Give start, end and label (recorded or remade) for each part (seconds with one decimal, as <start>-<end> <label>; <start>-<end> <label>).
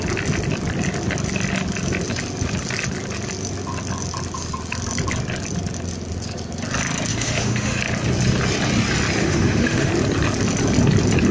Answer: 0.0-7.1 recorded; 7.1-7.8 remade; 7.8-9.2 recorded; 9.2-9.9 remade; 9.9-11.3 recorded